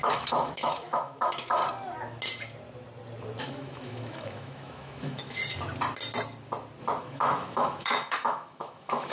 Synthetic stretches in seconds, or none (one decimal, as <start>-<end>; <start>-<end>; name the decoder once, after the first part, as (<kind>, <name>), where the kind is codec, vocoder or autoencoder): 0.0-1.6 (autoencoder, DAC-VAE); 3.4-5.4; 7.0-9.1